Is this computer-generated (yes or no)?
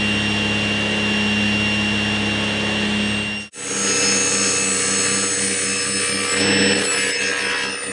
no